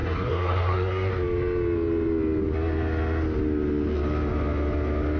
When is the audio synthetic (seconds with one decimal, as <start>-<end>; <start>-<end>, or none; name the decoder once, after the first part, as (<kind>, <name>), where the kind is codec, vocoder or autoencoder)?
0.0-1.1 (codec, SNAC)